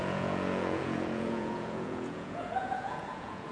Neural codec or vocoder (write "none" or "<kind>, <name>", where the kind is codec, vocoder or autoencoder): vocoder, Vocos